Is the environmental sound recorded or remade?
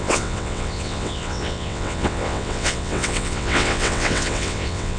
remade